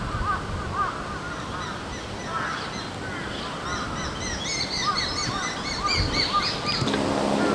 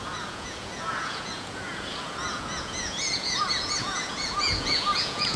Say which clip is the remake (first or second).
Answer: second